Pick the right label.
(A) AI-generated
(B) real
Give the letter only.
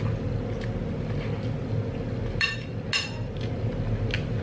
B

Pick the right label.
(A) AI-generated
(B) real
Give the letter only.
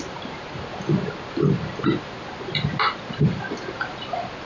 B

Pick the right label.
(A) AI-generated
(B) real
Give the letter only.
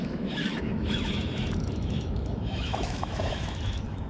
A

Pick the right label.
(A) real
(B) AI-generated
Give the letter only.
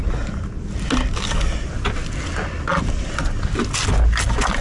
A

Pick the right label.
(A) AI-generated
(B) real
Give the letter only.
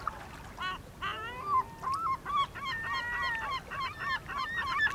B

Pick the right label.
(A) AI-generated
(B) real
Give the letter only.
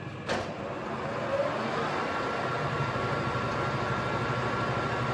B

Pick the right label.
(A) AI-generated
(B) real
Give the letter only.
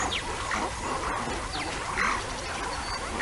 B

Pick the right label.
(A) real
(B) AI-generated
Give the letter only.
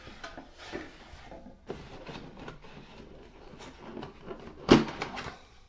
A